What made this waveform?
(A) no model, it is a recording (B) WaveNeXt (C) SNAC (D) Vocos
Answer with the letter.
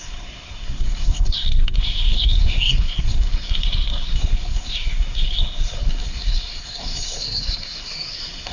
C